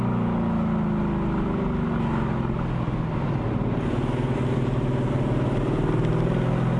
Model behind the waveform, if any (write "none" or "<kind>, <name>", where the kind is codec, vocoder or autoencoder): none